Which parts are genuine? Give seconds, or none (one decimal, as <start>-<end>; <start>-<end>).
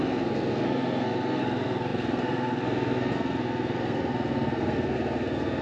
none